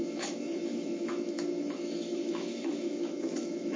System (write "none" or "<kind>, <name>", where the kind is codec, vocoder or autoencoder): autoencoder, DAC-VAE